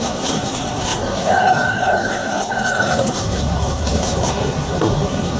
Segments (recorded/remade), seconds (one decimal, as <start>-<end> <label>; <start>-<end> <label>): 0.0-5.4 remade